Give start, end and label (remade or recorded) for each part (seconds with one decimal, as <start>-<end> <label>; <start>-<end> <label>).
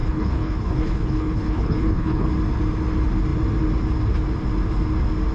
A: 0.0-2.3 remade; 2.3-5.3 recorded